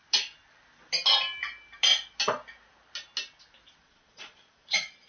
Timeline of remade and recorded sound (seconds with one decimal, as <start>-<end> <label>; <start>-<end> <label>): 0.0-3.8 recorded; 3.8-5.1 remade